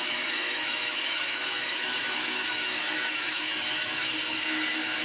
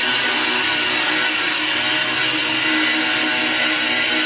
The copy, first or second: first